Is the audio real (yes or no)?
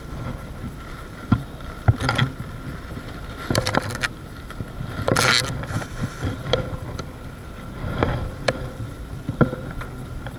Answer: no